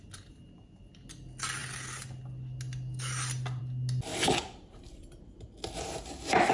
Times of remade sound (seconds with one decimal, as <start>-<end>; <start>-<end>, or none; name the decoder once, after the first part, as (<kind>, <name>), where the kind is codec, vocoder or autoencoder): none